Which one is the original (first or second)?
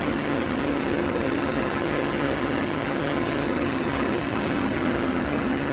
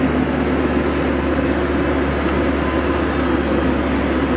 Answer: second